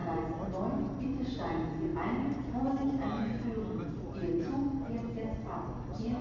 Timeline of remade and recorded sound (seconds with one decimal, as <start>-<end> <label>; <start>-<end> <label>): 0.0-6.2 recorded